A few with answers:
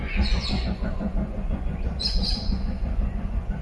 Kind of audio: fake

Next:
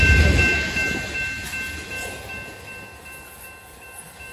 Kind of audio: real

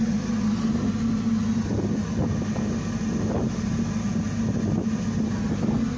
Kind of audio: real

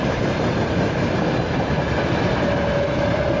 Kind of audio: real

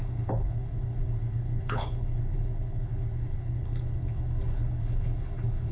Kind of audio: fake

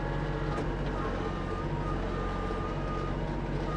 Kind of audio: real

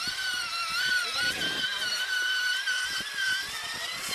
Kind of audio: real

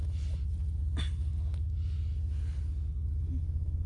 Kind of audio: real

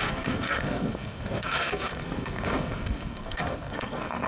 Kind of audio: fake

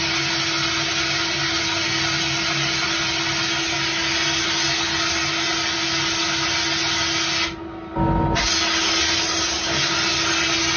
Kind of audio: real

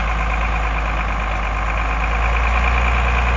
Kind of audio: real